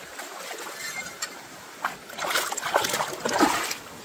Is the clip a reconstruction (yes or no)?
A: no